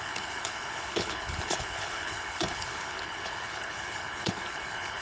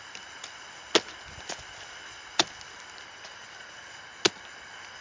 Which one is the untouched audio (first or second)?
second